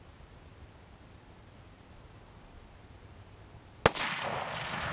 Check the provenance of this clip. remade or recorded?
recorded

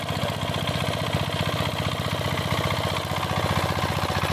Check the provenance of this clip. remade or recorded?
recorded